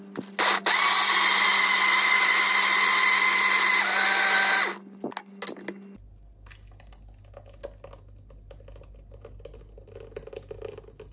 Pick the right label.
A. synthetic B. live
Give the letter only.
B